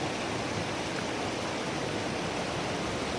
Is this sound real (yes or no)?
yes